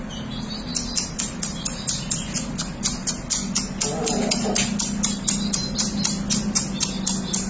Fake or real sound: real